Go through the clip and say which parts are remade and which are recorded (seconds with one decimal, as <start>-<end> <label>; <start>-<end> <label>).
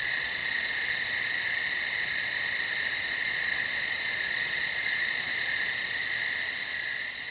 0.0-0.4 remade; 0.4-3.1 recorded; 3.1-5.3 remade; 5.3-6.7 recorded; 6.7-7.3 remade